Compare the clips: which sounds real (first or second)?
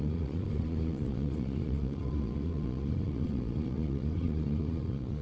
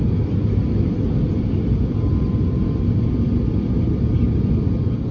second